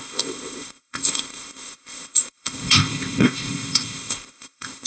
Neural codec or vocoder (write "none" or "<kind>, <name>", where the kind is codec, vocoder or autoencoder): codec, ZipCodec